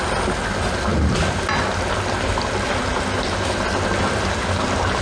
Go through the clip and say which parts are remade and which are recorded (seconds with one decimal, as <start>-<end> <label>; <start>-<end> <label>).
0.0-5.0 recorded